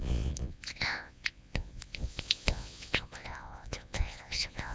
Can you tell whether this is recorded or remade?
remade